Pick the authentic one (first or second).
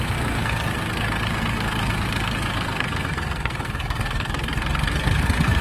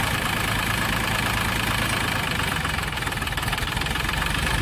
second